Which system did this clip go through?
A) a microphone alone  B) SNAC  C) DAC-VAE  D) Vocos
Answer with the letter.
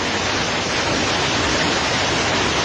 A